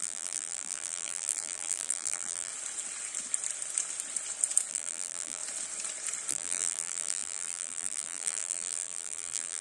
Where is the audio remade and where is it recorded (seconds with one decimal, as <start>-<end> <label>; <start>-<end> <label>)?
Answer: 0.0-2.5 remade; 2.5-4.7 recorded; 4.7-5.4 remade; 5.4-6.3 recorded; 6.3-9.6 remade